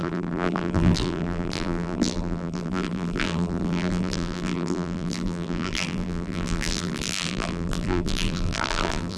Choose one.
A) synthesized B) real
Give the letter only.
A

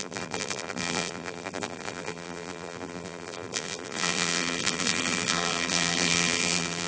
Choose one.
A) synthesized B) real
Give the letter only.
A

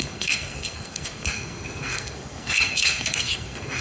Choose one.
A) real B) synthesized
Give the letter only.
B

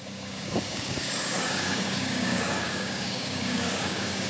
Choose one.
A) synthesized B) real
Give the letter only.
A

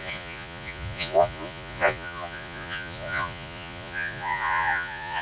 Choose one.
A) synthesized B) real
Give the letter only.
A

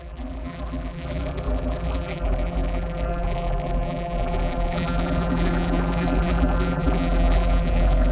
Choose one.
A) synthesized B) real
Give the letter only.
A